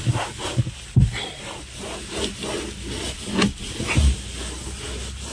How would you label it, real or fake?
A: real